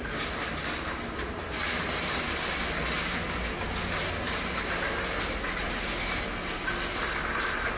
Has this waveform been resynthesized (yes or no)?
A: no